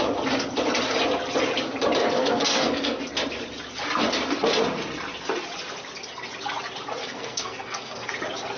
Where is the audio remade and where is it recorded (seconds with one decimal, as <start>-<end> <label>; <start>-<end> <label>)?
0.0-2.0 recorded; 2.0-3.0 remade; 3.0-7.0 recorded; 7.0-8.1 remade; 8.1-8.6 recorded